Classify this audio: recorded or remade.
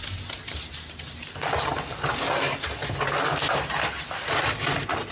recorded